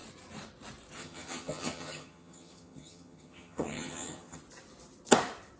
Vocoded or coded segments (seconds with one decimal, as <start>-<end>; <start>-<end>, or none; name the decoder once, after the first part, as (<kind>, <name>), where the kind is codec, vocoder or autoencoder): 1.0-4.4 (vocoder, HiFi-GAN)